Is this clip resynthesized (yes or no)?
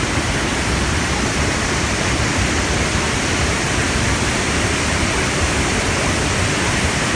yes